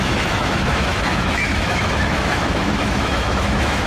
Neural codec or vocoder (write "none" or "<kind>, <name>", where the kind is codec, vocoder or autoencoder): autoencoder, DAC-VAE